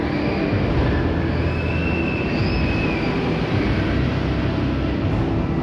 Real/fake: real